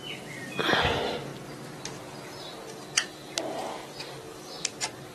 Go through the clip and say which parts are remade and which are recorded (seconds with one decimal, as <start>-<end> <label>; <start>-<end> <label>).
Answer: 0.0-5.1 recorded